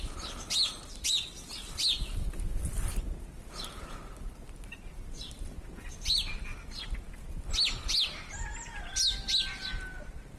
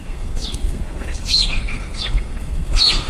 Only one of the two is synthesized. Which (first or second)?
second